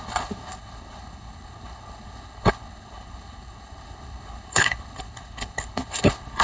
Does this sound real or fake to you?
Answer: fake